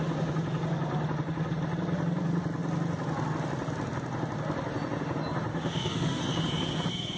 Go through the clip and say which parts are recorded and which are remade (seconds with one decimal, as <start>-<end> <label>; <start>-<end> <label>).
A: 0.0-5.5 recorded; 5.5-6.2 remade; 6.2-7.2 recorded